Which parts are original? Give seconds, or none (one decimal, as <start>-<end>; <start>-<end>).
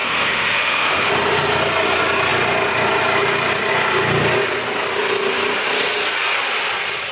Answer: 1.1-7.1